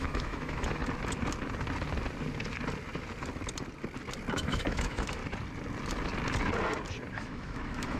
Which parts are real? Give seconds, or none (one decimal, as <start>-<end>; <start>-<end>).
0.8-4.3; 5.2-7.1